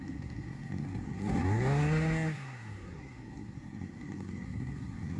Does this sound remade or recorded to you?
remade